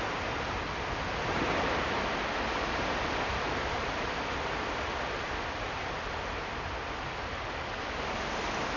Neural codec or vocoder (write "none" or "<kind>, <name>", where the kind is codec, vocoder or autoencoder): none